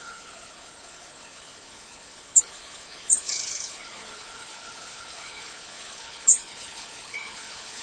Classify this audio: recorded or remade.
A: remade